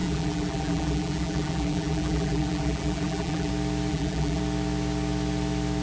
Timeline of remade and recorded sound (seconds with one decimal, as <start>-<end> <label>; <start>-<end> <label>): 0.0-3.5 remade; 3.5-3.9 recorded; 3.9-4.4 remade; 4.4-5.8 recorded